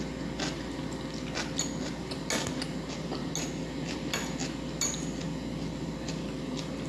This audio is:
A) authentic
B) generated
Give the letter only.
A